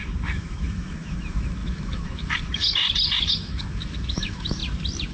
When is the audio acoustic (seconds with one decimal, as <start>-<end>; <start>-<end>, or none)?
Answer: 2.8-3.3; 4.6-5.1